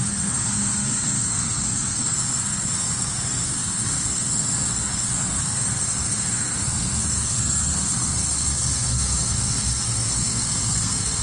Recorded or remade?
remade